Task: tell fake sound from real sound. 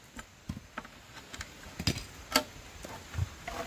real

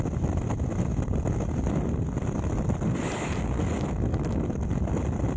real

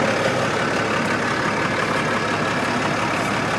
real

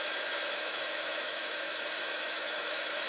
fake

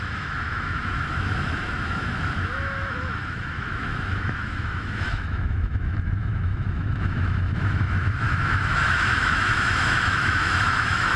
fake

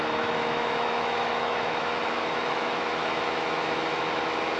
fake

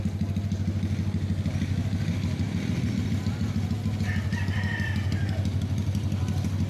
real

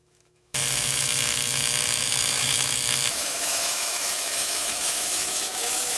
fake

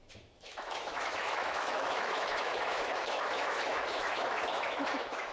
fake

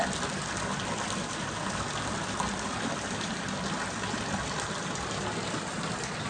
real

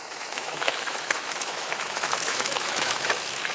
fake